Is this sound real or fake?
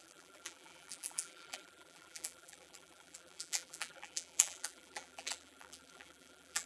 fake